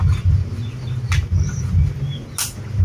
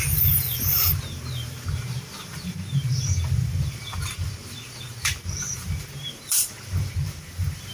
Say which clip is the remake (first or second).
second